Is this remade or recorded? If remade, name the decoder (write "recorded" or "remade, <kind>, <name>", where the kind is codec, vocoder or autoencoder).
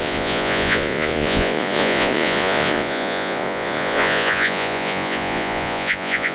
remade, vocoder, Vocos